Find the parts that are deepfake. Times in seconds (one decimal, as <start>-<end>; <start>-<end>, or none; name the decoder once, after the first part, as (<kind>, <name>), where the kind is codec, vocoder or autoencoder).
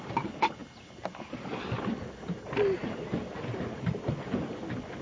none